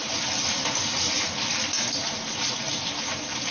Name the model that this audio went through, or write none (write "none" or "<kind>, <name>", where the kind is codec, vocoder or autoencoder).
none